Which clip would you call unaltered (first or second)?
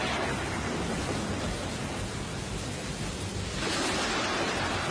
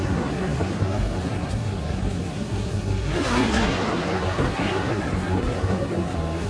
first